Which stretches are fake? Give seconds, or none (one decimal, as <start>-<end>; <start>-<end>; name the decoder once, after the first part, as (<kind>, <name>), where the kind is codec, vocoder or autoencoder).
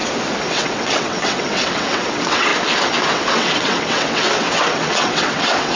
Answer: 0.5-2.5 (vocoder, WaveNeXt); 3.1-5.8